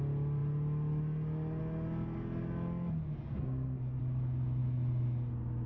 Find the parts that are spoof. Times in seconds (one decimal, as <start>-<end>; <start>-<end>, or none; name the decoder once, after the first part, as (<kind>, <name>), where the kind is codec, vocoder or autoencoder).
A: 3.3-4.0 (codec, SNAC)